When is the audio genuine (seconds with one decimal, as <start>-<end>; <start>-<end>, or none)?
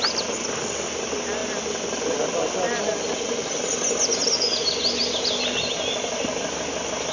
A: 0.0-7.1